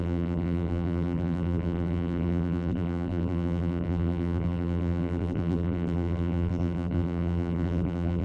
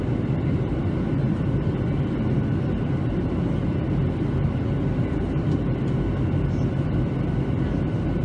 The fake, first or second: first